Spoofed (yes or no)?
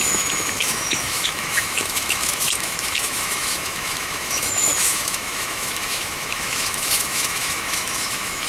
yes